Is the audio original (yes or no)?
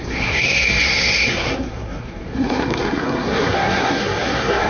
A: no